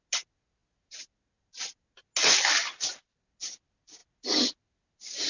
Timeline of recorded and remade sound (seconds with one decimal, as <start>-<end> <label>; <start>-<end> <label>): 0.0-5.3 recorded